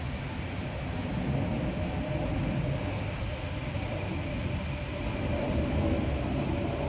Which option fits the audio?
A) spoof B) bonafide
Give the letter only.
B